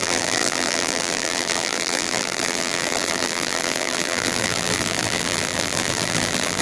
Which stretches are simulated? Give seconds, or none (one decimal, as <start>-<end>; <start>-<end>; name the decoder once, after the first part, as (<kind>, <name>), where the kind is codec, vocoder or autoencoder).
0.0-6.6 (vocoder, BigVGAN v2)